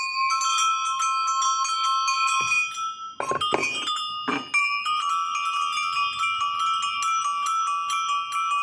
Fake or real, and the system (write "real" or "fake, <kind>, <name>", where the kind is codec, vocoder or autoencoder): real